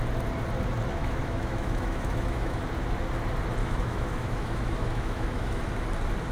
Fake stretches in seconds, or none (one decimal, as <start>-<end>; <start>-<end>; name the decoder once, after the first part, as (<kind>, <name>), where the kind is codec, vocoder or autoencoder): 1.0-2.6 (autoencoder, DAC-VAE); 3.6-5.6